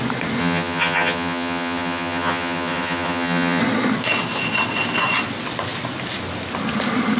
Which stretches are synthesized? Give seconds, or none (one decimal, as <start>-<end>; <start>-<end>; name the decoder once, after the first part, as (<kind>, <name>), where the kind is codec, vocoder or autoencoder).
0.4-3.6 (vocoder, HiFi-GAN)